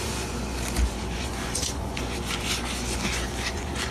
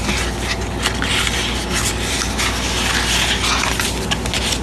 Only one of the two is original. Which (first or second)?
second